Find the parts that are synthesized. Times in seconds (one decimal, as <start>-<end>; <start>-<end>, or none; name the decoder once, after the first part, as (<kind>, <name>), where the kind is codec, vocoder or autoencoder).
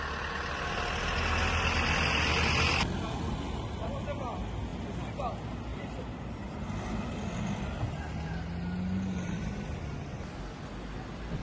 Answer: none